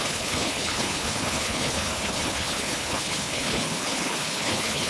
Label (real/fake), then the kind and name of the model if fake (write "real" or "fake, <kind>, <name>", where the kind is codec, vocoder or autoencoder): fake, codec, HILCodec